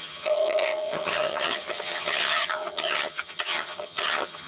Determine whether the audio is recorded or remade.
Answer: remade